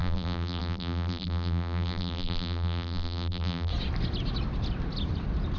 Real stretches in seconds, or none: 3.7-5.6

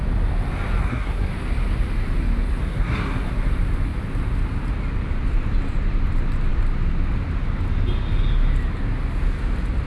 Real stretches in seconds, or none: 0.0-0.8; 1.3-2.6; 3.3-9.9

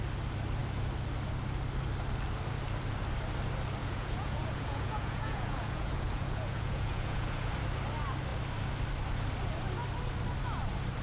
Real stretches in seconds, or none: 0.0-3.8; 7.5-11.0

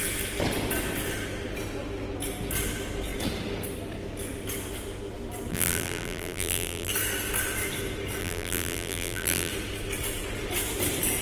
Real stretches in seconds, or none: 0.0-5.5; 6.9-8.2; 9.5-11.2

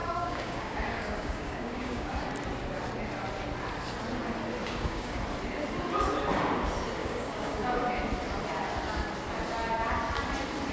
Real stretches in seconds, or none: 2.1-4.6; 5.2-7.0; 7.9-10.7

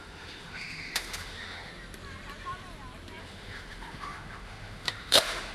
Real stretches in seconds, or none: 1.7-3.2

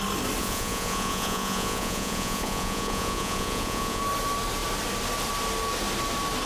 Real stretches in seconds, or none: 0.0-0.4; 4.0-6.5

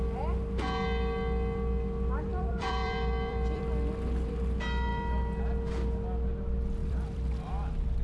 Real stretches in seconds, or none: 0.0-2.3; 3.6-6.8; 7.5-8.0